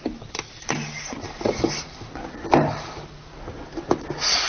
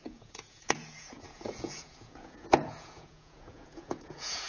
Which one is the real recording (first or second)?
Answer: first